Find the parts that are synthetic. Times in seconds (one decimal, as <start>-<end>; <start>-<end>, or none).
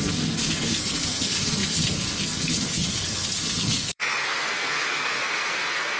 0.0-6.0